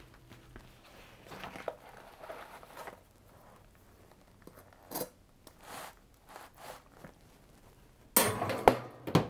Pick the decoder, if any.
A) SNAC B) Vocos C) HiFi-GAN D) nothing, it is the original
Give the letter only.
D